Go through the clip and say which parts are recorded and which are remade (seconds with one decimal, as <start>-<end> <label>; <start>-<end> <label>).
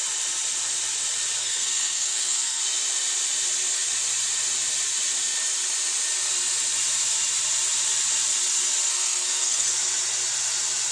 0.0-1.4 recorded; 1.4-2.6 remade; 2.6-8.9 recorded; 8.9-9.7 remade; 9.7-10.9 recorded